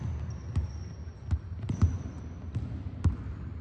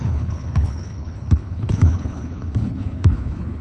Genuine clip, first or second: first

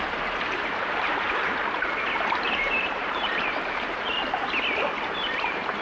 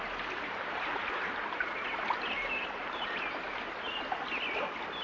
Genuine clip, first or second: second